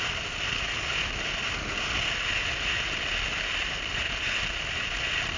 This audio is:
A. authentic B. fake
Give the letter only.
A